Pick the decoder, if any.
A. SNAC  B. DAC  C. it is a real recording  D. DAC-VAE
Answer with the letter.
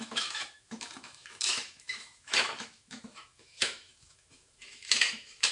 D